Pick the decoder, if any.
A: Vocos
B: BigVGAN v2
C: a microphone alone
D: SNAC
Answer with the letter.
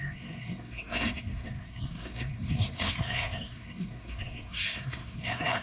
D